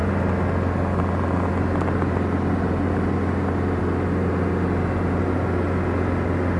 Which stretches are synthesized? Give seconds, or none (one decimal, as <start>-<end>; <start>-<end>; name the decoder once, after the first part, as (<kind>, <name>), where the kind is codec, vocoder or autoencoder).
none